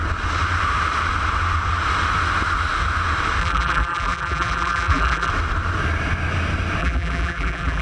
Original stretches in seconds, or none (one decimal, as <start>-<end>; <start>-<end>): 0.0-3.4; 5.3-6.8